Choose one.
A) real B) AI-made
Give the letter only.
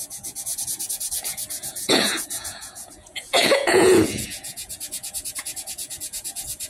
B